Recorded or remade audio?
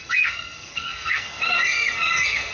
remade